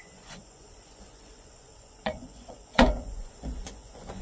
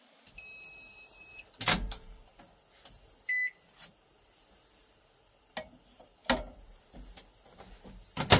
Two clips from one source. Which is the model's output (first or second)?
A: first